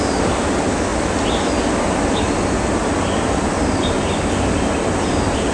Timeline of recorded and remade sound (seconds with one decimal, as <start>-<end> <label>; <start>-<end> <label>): 0.0-5.5 recorded